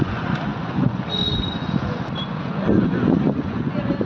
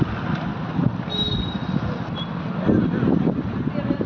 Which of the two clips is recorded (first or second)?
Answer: second